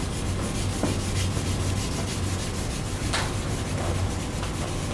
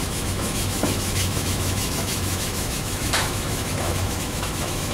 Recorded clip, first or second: first